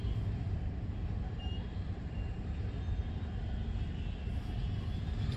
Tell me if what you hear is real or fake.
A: real